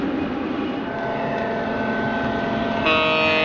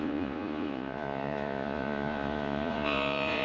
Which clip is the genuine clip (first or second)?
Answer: first